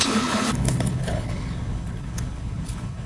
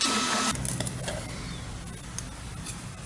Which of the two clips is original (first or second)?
second